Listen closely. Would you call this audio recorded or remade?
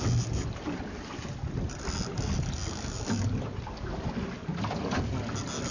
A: recorded